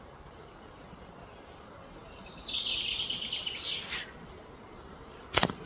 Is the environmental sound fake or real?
real